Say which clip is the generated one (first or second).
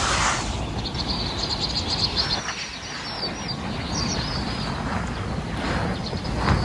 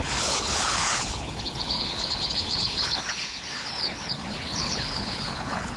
second